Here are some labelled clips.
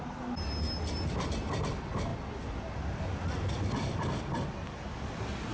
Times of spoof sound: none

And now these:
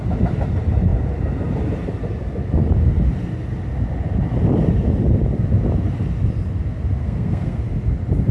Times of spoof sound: 7.0-7.6 (codec, SNAC)

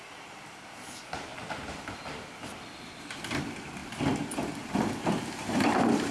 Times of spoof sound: none